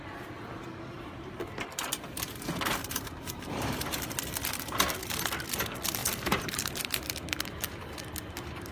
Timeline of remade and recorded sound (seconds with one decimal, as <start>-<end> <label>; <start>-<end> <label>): 0.0-2.8 recorded; 2.8-4.1 remade; 4.1-6.0 recorded; 6.0-7.0 remade; 7.0-8.7 recorded